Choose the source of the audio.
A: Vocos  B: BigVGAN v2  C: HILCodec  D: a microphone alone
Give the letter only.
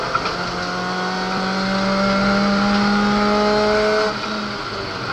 D